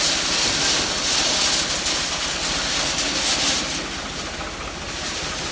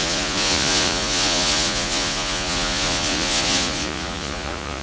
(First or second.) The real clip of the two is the first